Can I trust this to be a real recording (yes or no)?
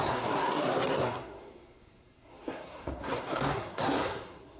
no